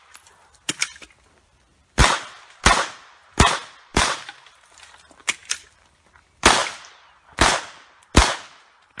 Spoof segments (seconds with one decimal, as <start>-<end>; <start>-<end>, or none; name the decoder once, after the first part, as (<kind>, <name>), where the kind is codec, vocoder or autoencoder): 0.8-2.0 (vocoder, BigVGAN v2); 3.9-4.9; 5.4-6.1; 6.6-7.9